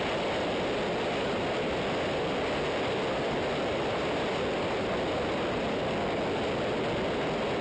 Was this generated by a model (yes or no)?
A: no